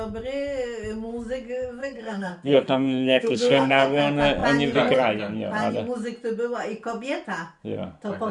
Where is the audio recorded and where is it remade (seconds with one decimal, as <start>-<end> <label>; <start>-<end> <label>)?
0.0-1.8 recorded; 1.8-4.0 remade; 4.0-8.3 recorded

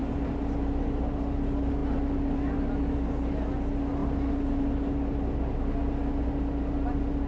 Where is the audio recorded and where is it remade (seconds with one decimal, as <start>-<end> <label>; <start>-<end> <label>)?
0.0-7.3 recorded

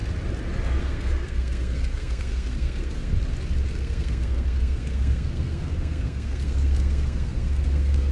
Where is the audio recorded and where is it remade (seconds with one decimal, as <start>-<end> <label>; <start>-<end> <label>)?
0.0-0.8 recorded; 0.8-3.1 remade; 3.1-3.7 recorded; 3.7-8.1 remade

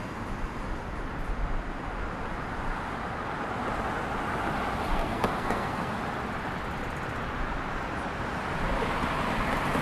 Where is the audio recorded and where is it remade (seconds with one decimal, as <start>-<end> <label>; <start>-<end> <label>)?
0.0-4.9 recorded; 4.9-5.9 remade; 5.9-9.8 recorded

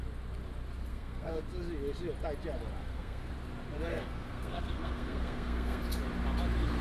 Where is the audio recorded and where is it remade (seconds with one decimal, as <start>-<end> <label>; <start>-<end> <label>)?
0.0-0.9 recorded; 0.9-1.4 remade; 1.4-2.8 recorded; 2.8-3.3 remade; 3.3-3.9 recorded; 3.9-5.8 remade; 5.8-6.8 recorded

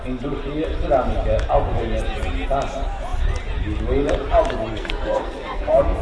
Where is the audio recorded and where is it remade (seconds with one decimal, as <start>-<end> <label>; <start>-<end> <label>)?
0.0-4.7 recorded; 4.7-6.0 remade

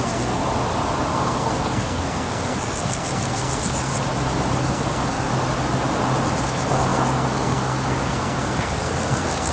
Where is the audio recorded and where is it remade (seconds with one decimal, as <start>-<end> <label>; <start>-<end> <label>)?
0.0-0.4 remade; 0.4-1.1 recorded; 1.1-3.9 remade; 3.9-4.6 recorded; 4.6-5.3 remade; 5.3-6.4 recorded; 6.4-9.5 remade

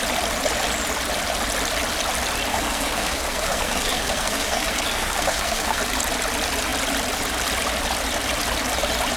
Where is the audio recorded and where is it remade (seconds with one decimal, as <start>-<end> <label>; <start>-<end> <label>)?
0.0-2.5 recorded; 2.5-5.8 remade; 5.8-9.2 recorded